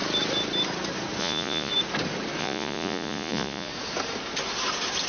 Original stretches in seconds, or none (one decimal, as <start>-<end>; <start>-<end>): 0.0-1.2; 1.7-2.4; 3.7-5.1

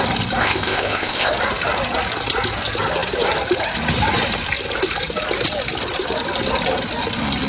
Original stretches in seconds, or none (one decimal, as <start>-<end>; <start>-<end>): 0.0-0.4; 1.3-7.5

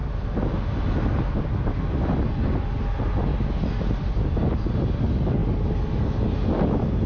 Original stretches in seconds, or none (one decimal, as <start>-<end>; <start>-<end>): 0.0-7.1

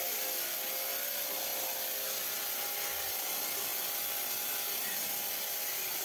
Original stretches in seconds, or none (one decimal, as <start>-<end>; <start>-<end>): 0.0-6.0